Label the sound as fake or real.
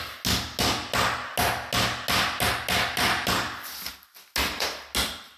real